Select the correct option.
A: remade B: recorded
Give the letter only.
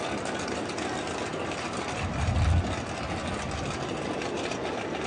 B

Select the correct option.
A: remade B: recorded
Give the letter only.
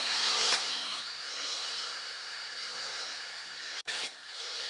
A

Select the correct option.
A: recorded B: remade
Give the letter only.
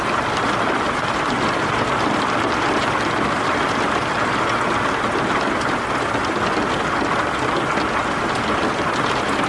A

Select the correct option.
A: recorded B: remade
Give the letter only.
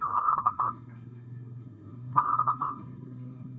B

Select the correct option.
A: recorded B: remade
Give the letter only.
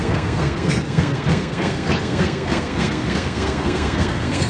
B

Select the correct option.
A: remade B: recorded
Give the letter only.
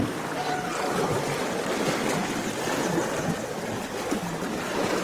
B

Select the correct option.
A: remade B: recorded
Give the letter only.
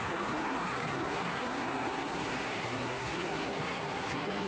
A